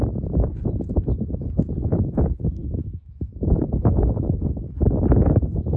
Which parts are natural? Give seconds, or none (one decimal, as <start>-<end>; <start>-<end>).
0.0-2.6